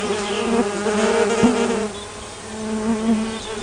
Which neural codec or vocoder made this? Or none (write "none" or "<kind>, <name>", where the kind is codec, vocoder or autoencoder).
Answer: none